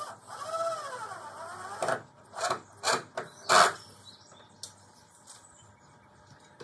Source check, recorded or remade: recorded